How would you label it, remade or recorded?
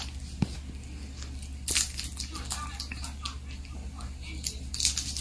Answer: recorded